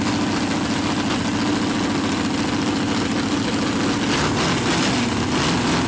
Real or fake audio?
real